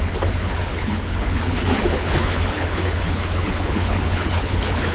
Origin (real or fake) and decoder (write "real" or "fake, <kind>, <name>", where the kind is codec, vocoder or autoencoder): fake, codec, HILCodec